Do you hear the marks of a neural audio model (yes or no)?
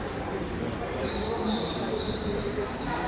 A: yes